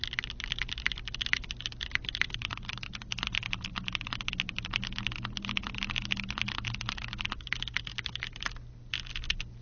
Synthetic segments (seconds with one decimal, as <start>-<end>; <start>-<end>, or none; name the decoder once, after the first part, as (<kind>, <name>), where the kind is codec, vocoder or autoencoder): none